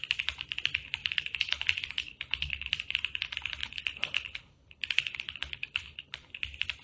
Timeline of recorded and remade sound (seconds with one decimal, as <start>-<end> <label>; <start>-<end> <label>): 0.0-1.0 recorded; 1.0-2.7 remade; 2.7-3.6 recorded; 3.6-6.3 remade; 6.3-6.8 recorded

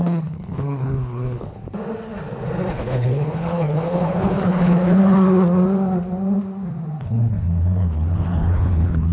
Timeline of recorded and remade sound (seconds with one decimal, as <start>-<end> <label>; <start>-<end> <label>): 0.0-1.6 remade; 1.6-2.7 recorded; 2.7-5.0 remade; 5.0-7.0 recorded; 7.0-9.1 remade

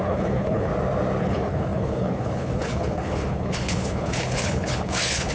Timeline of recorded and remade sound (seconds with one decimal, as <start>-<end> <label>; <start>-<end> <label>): 0.0-0.7 remade; 0.7-1.2 recorded; 1.2-5.3 remade

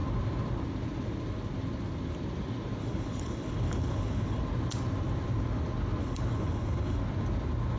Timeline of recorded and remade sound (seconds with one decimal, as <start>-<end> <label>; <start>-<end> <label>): 0.0-2.8 recorded; 2.8-4.4 remade; 4.4-6.0 recorded; 6.0-7.0 remade; 7.0-7.8 recorded

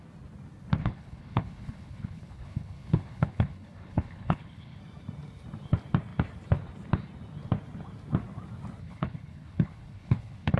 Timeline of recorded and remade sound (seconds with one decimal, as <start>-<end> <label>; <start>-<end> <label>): 0.0-0.8 recorded; 0.8-4.8 remade; 4.8-8.8 recorded; 8.8-10.6 remade

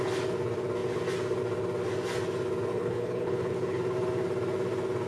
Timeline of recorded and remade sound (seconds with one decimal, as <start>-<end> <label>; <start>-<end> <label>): 0.0-2.7 recorded; 2.7-3.8 remade; 3.8-5.1 recorded

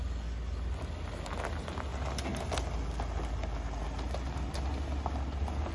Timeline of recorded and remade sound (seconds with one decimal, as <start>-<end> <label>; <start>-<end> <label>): 0.0-5.7 recorded

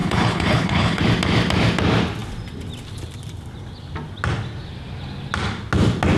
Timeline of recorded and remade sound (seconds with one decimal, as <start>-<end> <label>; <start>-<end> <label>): 0.0-1.0 remade; 1.0-6.2 recorded